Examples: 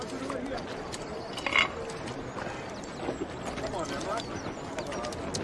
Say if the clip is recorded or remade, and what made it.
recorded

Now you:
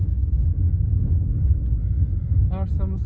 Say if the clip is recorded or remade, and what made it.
recorded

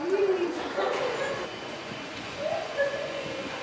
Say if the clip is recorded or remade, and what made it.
remade, vocoder, Vocos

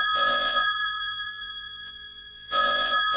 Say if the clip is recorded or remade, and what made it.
remade, vocoder, Vocos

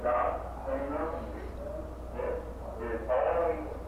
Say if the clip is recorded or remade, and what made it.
recorded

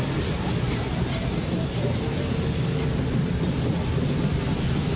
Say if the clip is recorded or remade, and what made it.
recorded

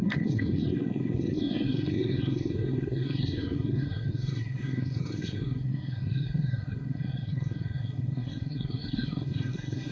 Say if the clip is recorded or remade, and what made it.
remade, codec, SNAC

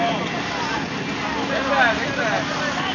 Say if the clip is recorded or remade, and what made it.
recorded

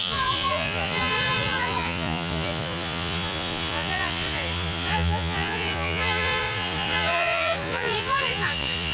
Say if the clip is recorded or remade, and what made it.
remade, vocoder, Vocos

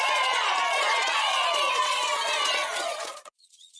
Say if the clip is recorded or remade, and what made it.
remade, vocoder, Vocos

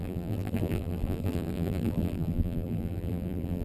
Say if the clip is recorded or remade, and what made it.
remade, vocoder, BigVGAN v2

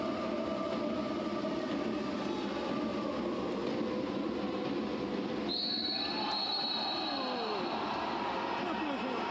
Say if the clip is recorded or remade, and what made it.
recorded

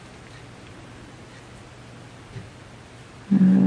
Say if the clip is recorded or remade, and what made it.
recorded